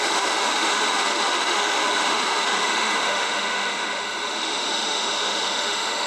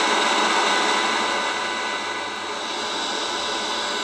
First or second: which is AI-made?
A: first